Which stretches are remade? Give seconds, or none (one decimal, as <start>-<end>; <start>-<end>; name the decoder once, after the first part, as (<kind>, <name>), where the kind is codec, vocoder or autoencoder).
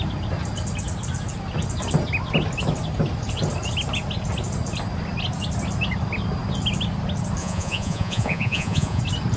7.4-9.0 (vocoder, Vocos)